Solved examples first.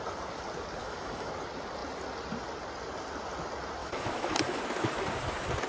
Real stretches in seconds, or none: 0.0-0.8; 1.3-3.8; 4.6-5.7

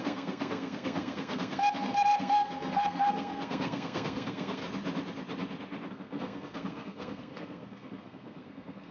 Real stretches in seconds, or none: 4.6-5.9

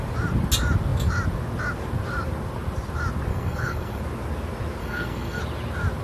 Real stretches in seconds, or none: 0.0-3.3; 4.0-4.8; 5.4-6.0

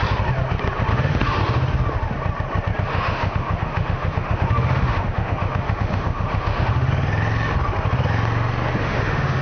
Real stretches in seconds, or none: 0.0-0.9; 1.4-2.9; 6.9-8.8

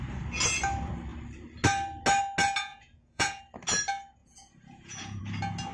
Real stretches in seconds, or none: 0.0-2.7; 3.4-4.2; 5.2-5.7

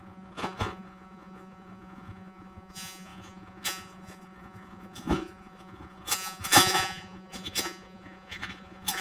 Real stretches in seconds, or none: none